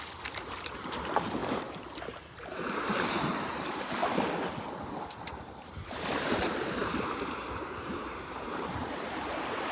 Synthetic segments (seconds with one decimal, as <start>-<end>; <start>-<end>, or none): 0.0-4.0; 5.1-9.7